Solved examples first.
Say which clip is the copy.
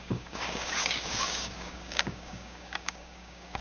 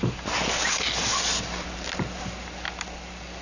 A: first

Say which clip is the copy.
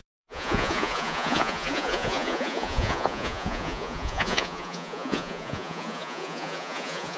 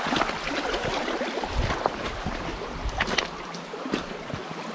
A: first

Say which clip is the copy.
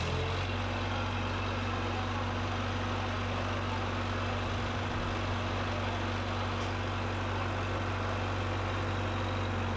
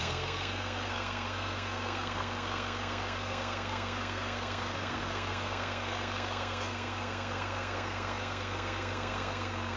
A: second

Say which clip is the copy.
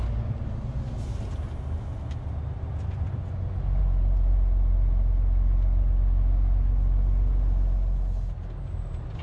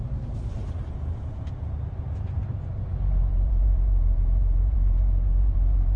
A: second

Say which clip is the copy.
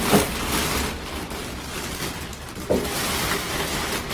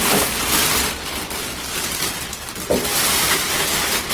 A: second